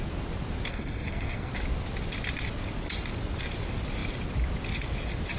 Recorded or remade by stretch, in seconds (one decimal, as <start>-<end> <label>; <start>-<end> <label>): 0.0-0.7 recorded; 0.7-1.5 remade; 1.5-5.4 recorded